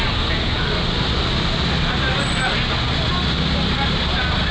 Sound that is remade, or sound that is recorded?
recorded